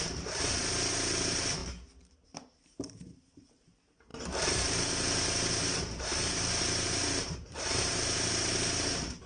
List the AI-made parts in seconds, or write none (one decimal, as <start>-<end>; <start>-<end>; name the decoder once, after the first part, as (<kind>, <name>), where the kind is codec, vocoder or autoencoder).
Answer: 0.0-1.6 (vocoder, BigVGAN v2); 2.3-9.3